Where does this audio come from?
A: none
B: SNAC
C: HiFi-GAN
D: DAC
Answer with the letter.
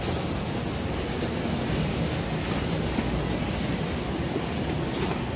A